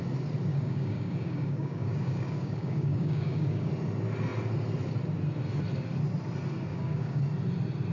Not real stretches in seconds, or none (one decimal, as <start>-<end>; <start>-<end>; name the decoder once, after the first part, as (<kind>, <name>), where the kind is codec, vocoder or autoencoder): 0.5-3.7 (codec, DAC); 6.7-7.2